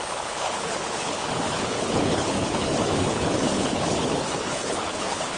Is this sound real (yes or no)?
no